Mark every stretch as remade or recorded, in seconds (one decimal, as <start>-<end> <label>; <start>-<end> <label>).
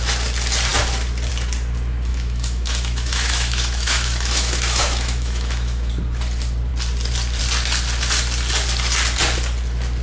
0.0-2.1 recorded; 2.1-5.9 remade; 5.9-10.0 recorded